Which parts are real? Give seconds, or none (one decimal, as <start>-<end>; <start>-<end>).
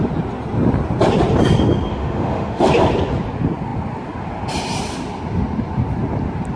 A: 0.0-1.9; 2.7-6.6